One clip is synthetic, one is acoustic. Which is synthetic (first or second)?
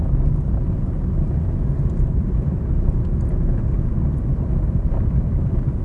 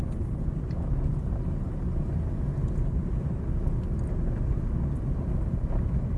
first